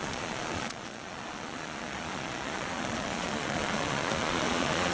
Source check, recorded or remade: remade